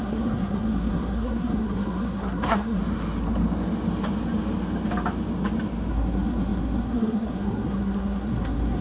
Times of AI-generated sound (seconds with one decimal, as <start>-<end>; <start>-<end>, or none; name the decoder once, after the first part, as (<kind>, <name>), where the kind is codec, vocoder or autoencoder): 0.0-2.8 (codec, SNAC); 5.9-8.8